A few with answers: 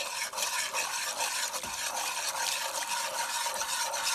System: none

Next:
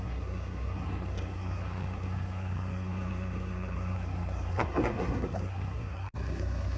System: codec, SNAC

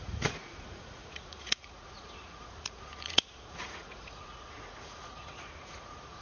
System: vocoder, Vocos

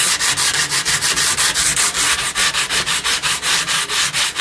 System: none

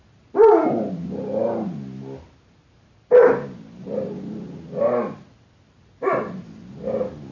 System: none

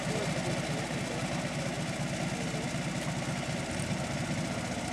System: none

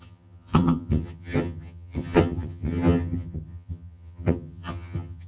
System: vocoder, HiFi-GAN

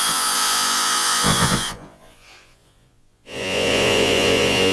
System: vocoder, Vocos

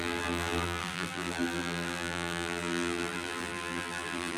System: vocoder, BigVGAN v2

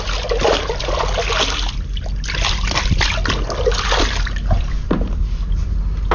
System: none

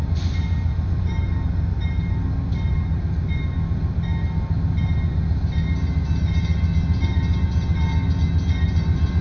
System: none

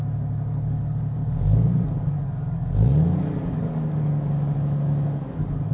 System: codec, DAC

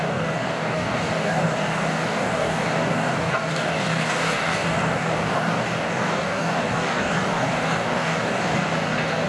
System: codec, DAC